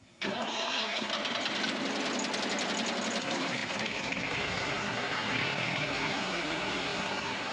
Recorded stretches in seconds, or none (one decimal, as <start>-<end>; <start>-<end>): 1.1-3.2